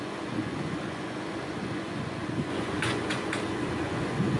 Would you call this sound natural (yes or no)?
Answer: no